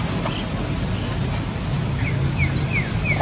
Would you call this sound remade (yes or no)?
no